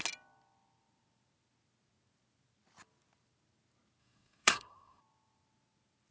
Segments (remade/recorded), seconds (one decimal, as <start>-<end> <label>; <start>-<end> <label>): 0.0-4.0 recorded; 4.0-5.0 remade; 5.0-6.1 recorded